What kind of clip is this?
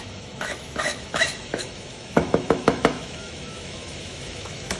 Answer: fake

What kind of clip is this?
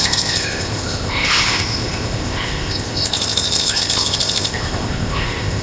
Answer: fake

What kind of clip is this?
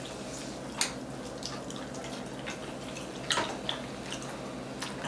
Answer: real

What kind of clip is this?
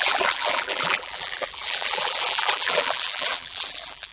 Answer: fake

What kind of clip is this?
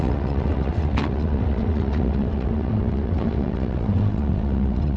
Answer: fake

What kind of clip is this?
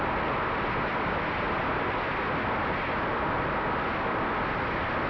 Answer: real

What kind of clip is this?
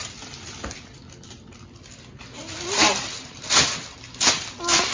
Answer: real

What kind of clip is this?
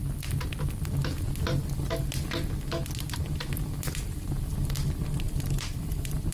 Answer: real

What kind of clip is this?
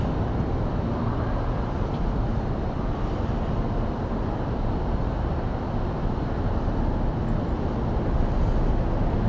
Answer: real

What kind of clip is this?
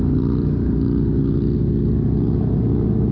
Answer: real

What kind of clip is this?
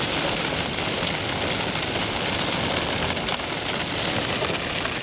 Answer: real